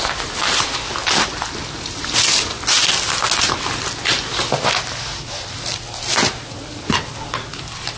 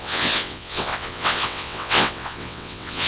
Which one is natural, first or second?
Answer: first